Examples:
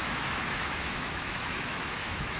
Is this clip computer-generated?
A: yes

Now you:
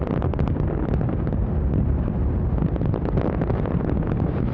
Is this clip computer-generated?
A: no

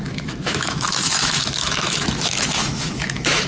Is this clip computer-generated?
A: yes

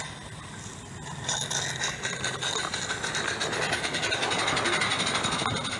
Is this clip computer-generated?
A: no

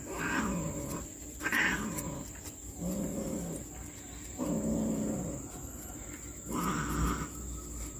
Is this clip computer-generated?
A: no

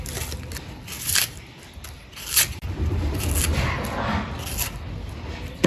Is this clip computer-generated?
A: no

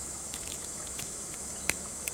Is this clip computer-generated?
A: yes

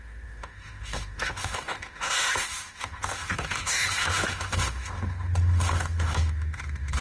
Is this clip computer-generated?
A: yes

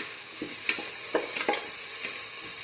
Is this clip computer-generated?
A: no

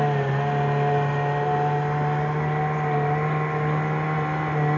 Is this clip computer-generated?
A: no